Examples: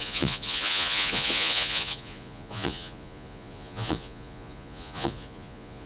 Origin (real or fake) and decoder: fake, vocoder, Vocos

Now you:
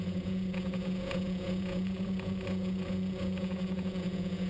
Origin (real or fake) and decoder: fake, vocoder, Vocos